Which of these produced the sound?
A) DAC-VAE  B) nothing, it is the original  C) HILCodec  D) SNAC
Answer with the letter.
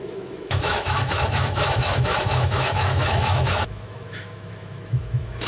A